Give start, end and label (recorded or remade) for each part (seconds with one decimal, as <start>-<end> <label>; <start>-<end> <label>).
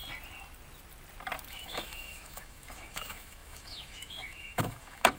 0.0-1.5 recorded; 1.5-5.2 remade